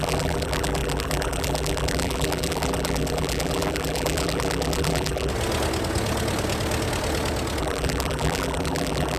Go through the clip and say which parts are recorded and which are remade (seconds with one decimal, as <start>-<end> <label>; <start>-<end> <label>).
0.0-5.3 remade; 5.3-7.6 recorded; 7.6-9.2 remade

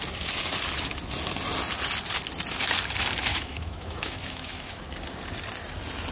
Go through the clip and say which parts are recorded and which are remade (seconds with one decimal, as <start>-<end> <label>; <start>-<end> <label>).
0.0-3.3 recorded; 3.3-4.8 remade; 4.8-6.1 recorded

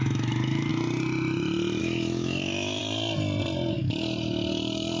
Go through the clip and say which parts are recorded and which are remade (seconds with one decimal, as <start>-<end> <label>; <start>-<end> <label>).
0.0-0.7 remade; 0.7-1.8 recorded; 1.8-2.8 remade; 2.8-3.7 recorded; 3.7-5.0 remade

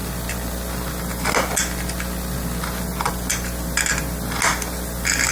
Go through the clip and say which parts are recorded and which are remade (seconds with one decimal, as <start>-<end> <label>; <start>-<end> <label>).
0.0-5.3 recorded

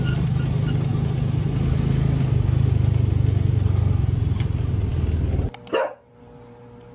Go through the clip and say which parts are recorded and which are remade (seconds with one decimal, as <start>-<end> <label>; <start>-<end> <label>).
0.0-6.9 recorded